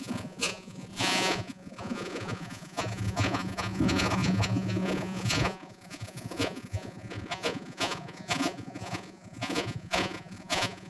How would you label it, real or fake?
fake